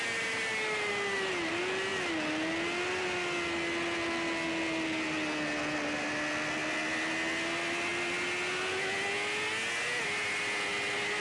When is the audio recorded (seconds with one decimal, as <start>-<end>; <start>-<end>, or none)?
0.0-11.2